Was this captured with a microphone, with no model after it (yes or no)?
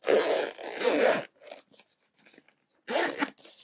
yes